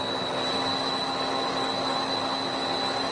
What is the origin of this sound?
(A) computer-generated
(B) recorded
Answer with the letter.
B